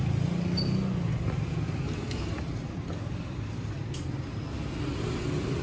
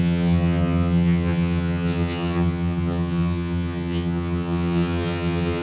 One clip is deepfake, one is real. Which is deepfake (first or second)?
second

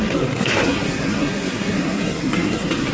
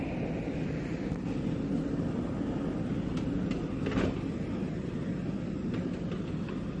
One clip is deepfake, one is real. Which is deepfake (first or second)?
first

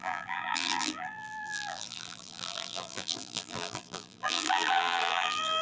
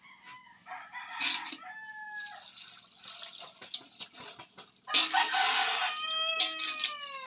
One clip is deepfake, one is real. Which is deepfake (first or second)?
first